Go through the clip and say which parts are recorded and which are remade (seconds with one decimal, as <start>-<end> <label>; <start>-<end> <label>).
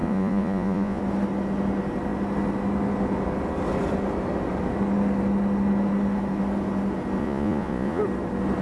0.0-1.0 remade; 1.0-7.2 recorded; 7.2-8.0 remade; 8.0-8.6 recorded